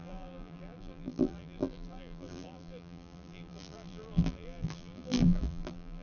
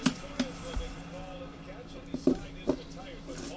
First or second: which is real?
second